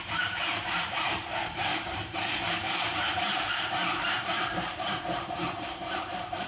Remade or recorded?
remade